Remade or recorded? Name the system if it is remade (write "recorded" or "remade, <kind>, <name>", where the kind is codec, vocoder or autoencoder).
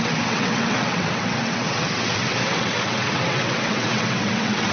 remade, vocoder, WaveNeXt